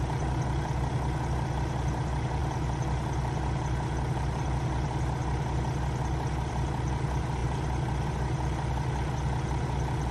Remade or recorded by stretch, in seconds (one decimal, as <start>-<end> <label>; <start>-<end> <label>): 0.0-10.1 recorded